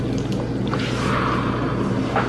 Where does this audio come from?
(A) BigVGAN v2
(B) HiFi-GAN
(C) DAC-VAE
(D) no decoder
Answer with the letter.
D